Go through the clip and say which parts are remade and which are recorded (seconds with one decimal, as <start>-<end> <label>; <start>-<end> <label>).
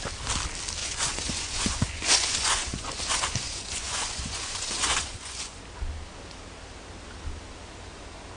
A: 0.0-0.8 recorded; 0.8-5.6 remade; 5.6-8.4 recorded